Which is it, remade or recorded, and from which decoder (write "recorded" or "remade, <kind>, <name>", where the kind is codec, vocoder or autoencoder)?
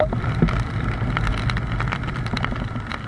recorded